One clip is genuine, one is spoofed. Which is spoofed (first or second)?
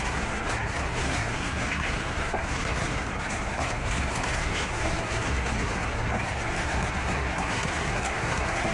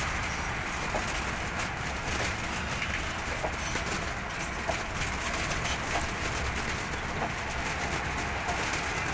first